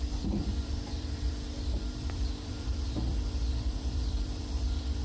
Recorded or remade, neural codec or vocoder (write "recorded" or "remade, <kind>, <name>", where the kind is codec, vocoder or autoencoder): remade, vocoder, BigVGAN v2